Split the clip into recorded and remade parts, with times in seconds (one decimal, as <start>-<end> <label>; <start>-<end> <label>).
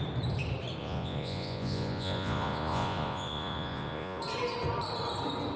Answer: 0.0-0.8 recorded; 0.8-4.2 remade; 4.2-5.6 recorded